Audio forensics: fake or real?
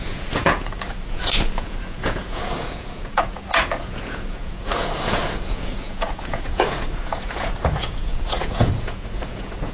fake